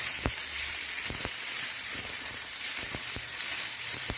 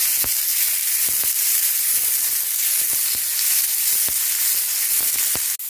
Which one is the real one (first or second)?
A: second